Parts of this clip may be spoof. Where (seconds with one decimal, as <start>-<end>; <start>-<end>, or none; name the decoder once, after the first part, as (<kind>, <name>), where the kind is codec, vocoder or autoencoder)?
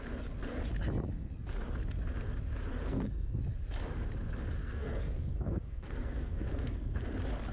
2.8-3.4 (codec, SNAC); 4.6-7.0